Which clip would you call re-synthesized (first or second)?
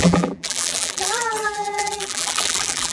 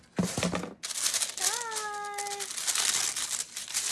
first